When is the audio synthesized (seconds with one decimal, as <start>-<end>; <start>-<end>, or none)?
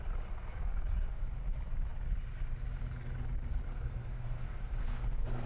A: 3.7-5.5